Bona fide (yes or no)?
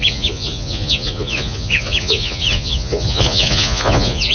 no